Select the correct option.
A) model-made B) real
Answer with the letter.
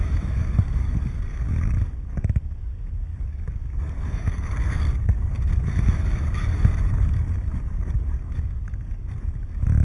A